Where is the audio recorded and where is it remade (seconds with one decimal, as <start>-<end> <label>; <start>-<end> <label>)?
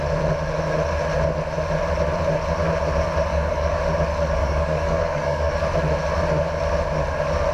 0.0-3.3 recorded; 3.3-3.8 remade; 3.8-4.4 recorded; 4.4-5.5 remade; 5.5-7.5 recorded